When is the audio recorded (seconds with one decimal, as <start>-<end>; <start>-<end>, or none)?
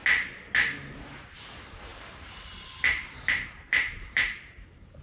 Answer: 0.0-1.2